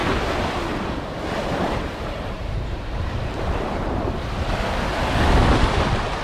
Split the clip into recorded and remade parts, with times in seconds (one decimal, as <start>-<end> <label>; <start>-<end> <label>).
0.0-0.9 remade; 0.9-1.4 recorded; 1.4-4.5 remade; 4.5-6.2 recorded